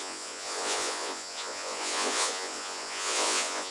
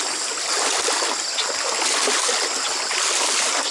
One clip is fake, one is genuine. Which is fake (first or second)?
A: first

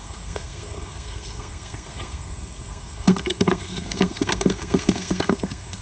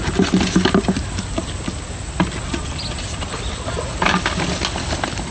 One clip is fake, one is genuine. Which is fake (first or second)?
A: first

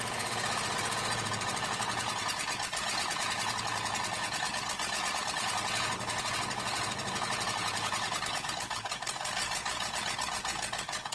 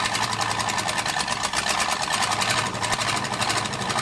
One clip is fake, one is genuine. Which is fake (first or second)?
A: first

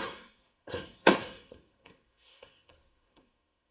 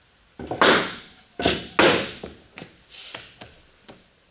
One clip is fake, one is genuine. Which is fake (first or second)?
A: first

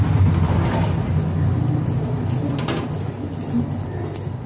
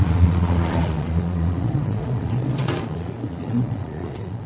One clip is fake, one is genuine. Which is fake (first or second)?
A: second